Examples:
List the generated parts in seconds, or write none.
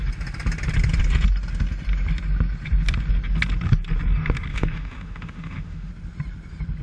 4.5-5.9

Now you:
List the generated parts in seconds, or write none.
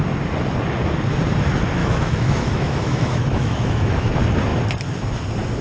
1.8-4.1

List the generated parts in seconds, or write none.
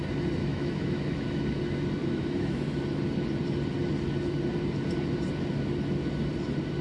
0.4-1.6; 2.0-2.8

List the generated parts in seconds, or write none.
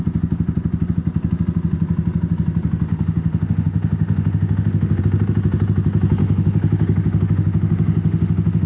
2.9-5.0; 6.2-8.7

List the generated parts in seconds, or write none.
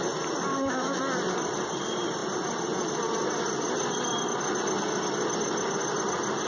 0.5-1.0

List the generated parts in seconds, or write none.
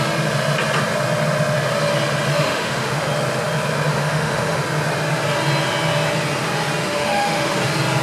2.3-3.1; 3.9-4.6; 6.8-7.6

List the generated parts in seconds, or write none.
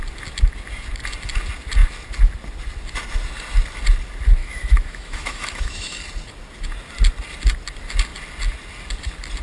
4.4-6.0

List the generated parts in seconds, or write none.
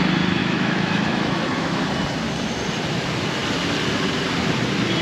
0.4-1.8